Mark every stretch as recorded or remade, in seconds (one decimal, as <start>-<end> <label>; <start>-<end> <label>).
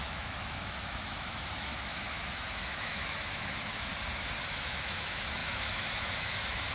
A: 0.0-3.9 remade; 3.9-4.5 recorded; 4.5-6.7 remade